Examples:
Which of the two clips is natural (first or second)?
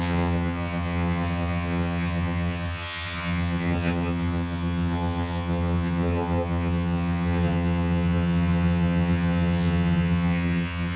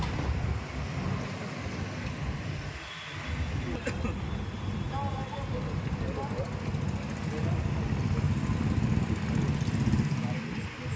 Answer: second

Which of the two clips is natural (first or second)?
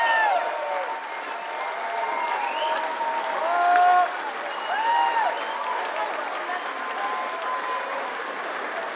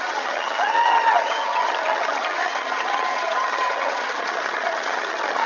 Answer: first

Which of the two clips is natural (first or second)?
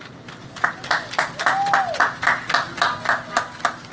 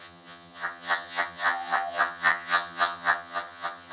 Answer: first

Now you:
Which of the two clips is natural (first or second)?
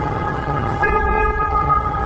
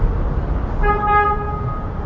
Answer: second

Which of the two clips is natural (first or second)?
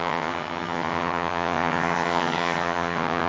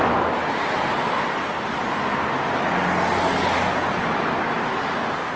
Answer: second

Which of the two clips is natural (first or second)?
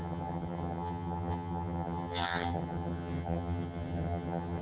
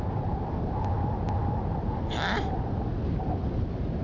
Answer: second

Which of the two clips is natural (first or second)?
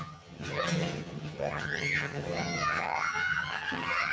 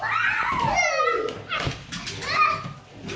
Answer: second